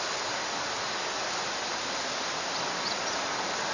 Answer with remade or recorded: recorded